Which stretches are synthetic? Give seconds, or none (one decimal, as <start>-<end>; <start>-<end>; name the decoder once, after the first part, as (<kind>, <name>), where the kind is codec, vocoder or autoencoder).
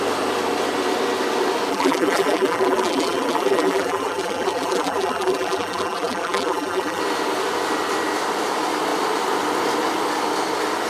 1.7-7.0 (vocoder, BigVGAN v2)